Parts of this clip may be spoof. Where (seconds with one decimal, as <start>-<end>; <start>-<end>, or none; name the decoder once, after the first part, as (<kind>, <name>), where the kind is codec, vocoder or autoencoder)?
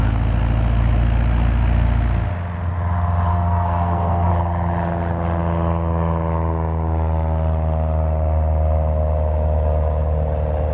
3.3-4.3 (codec, SNAC)